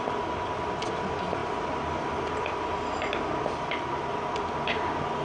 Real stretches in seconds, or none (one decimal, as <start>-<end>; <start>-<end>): 0.0-5.2